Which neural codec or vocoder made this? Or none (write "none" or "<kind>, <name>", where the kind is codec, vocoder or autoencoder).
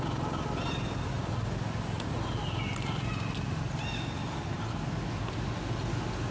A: none